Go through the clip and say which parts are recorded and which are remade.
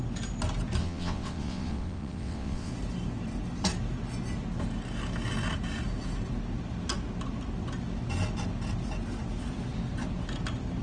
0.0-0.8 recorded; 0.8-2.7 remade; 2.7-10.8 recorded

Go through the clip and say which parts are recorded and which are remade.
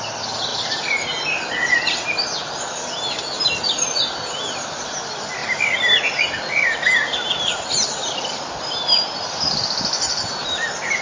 0.0-11.0 recorded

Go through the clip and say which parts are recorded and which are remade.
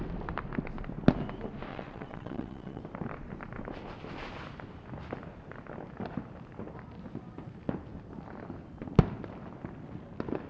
0.0-1.7 recorded; 1.7-2.8 remade; 2.8-10.5 recorded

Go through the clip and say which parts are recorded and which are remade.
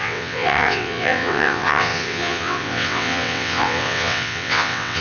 0.0-5.0 remade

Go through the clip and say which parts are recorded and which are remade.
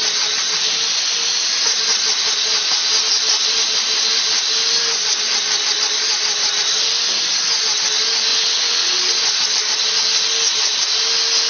0.0-8.3 recorded; 8.3-9.0 remade; 9.0-11.5 recorded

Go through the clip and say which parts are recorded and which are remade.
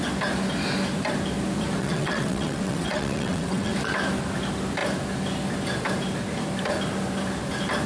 0.0-1.8 recorded; 1.8-3.7 remade; 3.7-7.9 recorded